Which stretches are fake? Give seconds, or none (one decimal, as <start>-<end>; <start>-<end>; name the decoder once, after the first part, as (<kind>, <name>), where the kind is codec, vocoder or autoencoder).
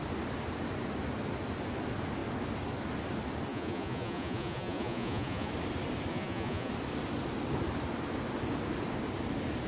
3.5-5.5 (vocoder, Vocos); 6.1-6.7